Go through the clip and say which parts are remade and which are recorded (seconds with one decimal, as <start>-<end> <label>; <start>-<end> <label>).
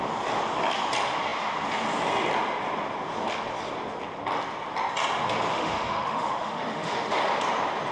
0.0-5.5 recorded; 5.5-7.2 remade; 7.2-7.9 recorded